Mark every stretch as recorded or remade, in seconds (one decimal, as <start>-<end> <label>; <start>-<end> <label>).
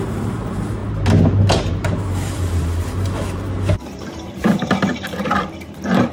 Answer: 0.0-0.8 remade; 0.8-1.7 recorded; 1.7-4.9 remade; 4.9-5.6 recorded; 5.6-6.1 remade